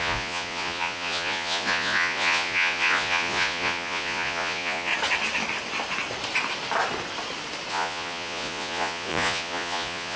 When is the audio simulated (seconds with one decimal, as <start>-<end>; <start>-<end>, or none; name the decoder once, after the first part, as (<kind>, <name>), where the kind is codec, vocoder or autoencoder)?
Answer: 0.0-4.9 (vocoder, Vocos); 7.7-10.2